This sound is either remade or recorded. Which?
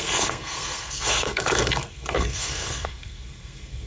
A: remade